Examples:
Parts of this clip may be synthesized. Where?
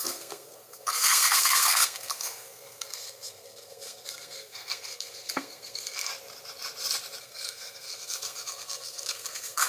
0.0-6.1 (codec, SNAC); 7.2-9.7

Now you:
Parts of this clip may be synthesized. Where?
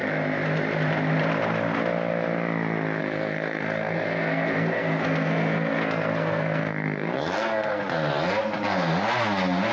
3.0-7.8 (codec, SNAC)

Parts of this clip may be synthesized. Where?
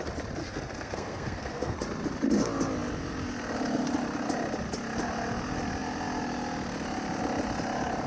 0.4-1.8 (codec, SNAC)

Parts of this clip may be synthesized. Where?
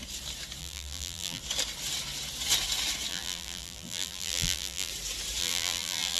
0.6-1.4 (vocoder, BigVGAN v2); 3.1-4.9; 5.4-6.2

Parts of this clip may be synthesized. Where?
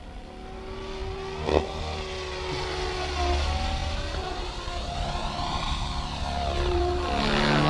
5.5-7.1 (vocoder, BigVGAN v2)